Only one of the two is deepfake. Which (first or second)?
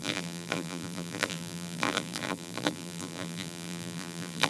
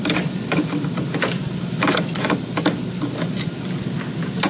first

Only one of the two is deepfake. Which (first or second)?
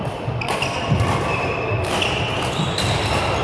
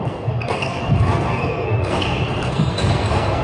second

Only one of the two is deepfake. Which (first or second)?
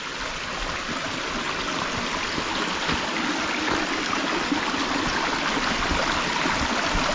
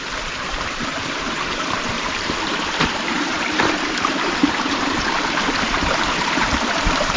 second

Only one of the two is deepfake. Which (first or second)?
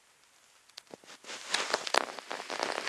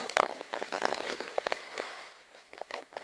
second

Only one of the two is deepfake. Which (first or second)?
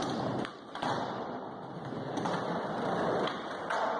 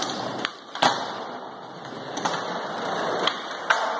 first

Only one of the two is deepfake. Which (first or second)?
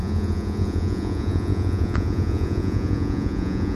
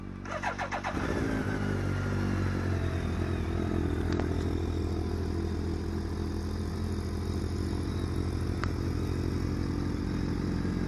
first